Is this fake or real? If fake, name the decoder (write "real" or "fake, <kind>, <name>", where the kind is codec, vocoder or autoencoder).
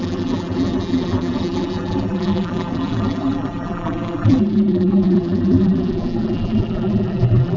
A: fake, vocoder, BigVGAN v2